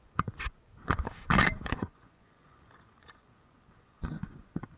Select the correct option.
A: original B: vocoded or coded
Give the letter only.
B